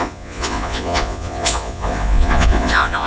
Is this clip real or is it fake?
fake